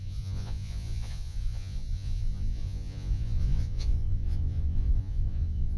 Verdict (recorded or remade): remade